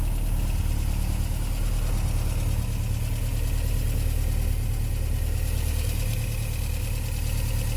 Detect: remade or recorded recorded